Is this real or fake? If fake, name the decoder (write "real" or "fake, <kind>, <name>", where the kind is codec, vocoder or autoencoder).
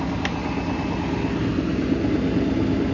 real